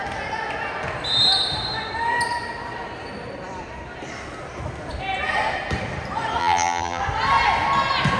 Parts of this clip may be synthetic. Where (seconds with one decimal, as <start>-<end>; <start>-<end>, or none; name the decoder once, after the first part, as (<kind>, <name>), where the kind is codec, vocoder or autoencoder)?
6.4-7.0 (vocoder, BigVGAN v2)